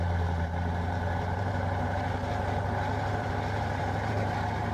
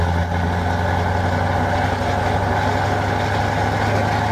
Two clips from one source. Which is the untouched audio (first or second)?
second